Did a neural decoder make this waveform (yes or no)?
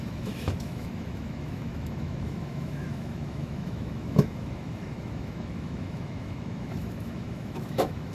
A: yes